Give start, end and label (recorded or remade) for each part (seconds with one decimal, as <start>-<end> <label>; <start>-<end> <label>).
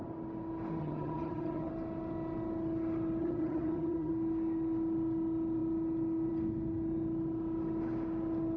0.0-0.8 recorded; 0.8-1.7 remade; 1.7-3.2 recorded; 3.2-4.1 remade; 4.1-8.6 recorded